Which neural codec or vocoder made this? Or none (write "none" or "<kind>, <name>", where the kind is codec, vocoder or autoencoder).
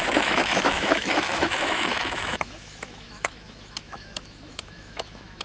autoencoder, DAC-VAE